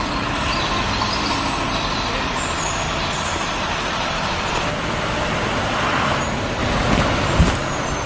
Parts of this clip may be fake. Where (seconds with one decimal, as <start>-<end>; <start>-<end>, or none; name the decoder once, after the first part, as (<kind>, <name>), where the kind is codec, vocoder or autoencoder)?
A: none